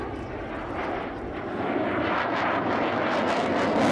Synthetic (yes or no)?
no